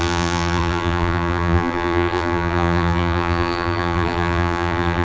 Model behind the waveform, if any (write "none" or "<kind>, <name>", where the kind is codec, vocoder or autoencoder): vocoder, BigVGAN v2